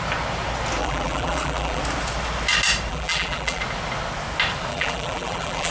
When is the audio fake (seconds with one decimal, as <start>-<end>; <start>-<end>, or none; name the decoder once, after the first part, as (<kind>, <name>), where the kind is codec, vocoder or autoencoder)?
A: 0.8-1.8 (vocoder, BigVGAN v2); 2.9-3.6; 4.7-5.7